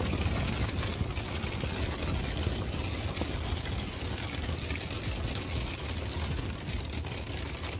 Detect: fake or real real